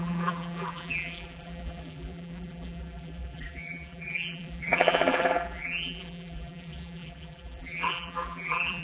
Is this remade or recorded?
remade